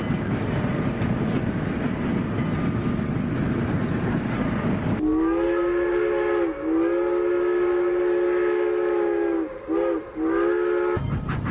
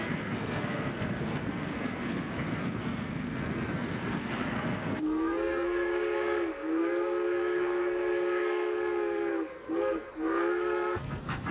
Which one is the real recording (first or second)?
first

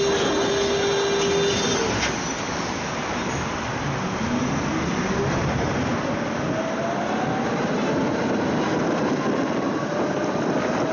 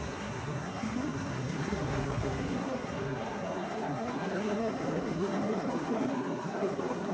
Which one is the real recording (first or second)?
first